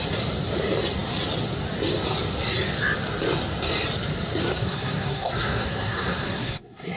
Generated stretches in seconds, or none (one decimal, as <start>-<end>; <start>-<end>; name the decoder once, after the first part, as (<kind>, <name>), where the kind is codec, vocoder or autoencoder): 4.4-7.0 (codec, SNAC)